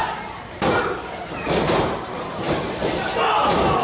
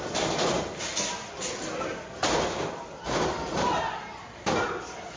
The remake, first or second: first